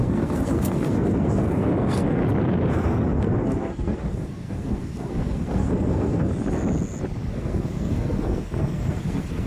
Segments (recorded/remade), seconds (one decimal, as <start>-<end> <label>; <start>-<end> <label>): 0.0-2.2 remade; 2.2-2.7 recorded; 2.7-6.3 remade; 6.3-7.3 recorded; 7.3-9.5 remade

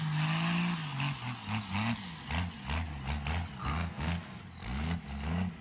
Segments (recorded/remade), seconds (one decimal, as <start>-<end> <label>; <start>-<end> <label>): 0.0-3.6 recorded; 3.6-4.4 remade; 4.4-5.6 recorded

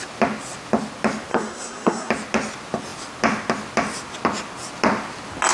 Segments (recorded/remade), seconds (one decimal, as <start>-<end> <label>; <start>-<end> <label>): 0.0-1.3 recorded; 1.3-2.1 remade; 2.1-5.5 recorded

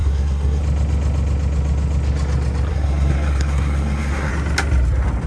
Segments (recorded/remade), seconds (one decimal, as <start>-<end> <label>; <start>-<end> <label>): 0.0-0.6 remade; 0.6-2.7 recorded; 2.7-4.3 remade; 4.3-5.3 recorded

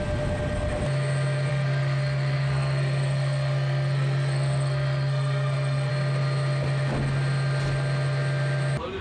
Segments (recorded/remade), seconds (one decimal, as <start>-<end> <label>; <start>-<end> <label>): 0.0-1.5 recorded; 1.5-5.9 remade; 5.9-9.0 recorded

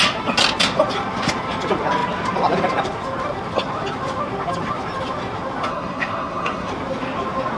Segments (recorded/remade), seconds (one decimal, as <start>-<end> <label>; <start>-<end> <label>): 0.0-5.7 recorded; 5.7-6.7 remade; 6.7-7.6 recorded

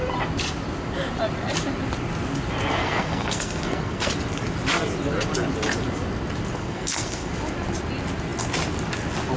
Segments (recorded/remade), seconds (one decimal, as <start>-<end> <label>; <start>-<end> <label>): 0.0-2.8 recorded; 2.8-4.1 remade; 4.1-6.6 recorded; 6.6-7.3 remade; 7.3-9.4 recorded